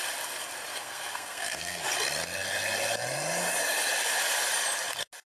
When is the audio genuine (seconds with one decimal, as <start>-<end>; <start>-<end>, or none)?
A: 0.0-0.7; 1.8-5.3